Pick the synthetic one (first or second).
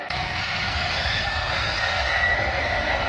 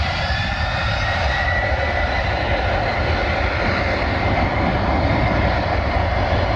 first